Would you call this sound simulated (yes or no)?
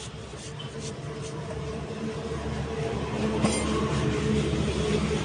no